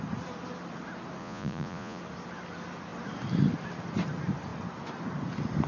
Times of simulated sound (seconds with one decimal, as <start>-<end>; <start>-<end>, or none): 1.2-2.0